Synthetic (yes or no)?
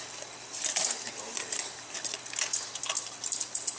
no